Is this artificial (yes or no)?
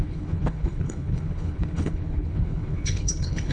yes